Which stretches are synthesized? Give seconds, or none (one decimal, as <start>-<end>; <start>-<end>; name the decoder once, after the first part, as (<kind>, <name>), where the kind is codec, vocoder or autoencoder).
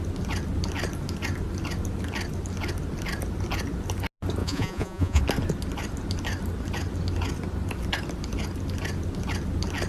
4.4-5.2 (vocoder, Vocos)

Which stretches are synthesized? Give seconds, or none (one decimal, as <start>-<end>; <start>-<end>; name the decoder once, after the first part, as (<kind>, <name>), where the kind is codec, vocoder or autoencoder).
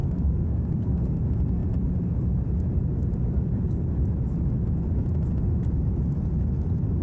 0.0-1.2 (codec, SNAC)